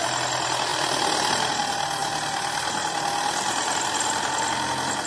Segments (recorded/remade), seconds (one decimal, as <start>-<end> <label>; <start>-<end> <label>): 0.0-5.1 recorded